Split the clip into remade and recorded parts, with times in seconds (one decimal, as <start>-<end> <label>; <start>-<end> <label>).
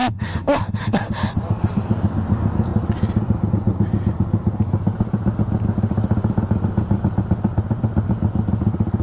0.0-1.1 remade; 1.1-9.0 recorded